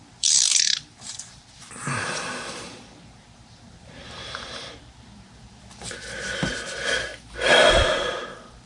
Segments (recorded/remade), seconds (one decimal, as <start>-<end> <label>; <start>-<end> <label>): 0.0-7.1 remade; 7.1-7.7 recorded; 7.7-8.7 remade